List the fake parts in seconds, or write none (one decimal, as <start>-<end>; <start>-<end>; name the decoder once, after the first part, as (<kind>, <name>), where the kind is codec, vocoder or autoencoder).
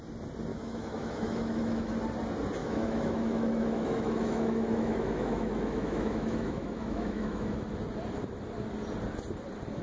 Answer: 0.5-1.9 (autoencoder, DAC-VAE); 2.6-7.7